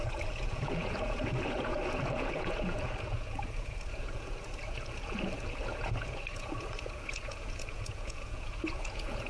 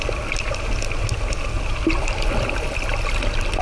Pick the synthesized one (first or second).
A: first